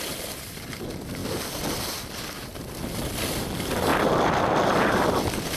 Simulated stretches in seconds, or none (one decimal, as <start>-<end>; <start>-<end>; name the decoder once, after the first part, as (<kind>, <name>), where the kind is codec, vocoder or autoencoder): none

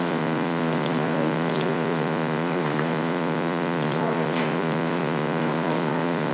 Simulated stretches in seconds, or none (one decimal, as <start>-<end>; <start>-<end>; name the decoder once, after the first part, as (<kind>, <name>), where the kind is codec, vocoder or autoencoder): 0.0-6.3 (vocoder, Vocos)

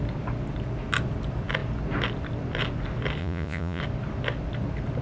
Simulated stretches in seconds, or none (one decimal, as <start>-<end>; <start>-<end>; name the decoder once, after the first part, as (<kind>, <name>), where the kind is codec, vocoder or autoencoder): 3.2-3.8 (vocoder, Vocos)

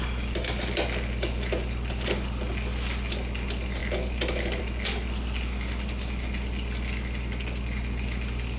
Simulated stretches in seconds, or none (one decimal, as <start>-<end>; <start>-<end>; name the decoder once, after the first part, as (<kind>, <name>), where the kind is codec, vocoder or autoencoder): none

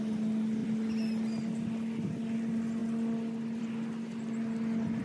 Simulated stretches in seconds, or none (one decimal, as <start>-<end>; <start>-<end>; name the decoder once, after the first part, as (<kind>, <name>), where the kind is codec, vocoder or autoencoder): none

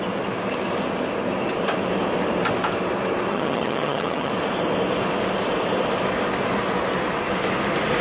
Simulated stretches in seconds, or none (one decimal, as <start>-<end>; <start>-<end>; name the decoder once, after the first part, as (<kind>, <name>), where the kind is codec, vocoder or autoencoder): 3.3-4.3 (vocoder, HiFi-GAN)

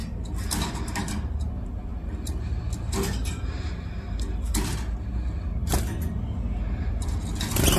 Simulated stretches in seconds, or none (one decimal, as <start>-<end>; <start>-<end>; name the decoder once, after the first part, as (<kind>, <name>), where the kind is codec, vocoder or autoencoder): none

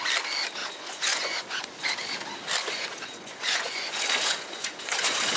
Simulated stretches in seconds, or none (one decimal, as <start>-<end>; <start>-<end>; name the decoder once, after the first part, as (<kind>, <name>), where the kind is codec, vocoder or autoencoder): 0.6-1.9 (vocoder, Vocos); 2.6-5.4